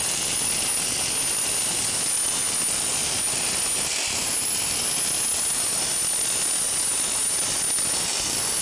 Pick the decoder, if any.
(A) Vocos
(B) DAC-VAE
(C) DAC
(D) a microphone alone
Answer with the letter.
D